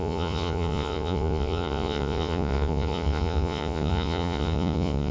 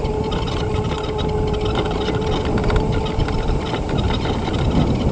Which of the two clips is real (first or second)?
second